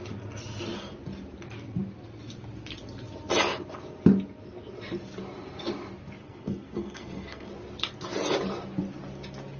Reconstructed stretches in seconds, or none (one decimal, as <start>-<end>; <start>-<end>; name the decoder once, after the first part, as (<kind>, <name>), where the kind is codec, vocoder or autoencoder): 6.2-7.5 (codec, SNAC)